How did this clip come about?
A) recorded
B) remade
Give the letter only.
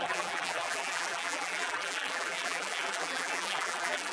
B